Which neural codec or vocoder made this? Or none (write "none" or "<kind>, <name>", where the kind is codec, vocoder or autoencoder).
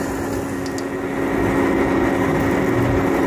none